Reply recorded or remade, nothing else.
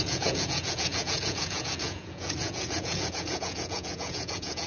remade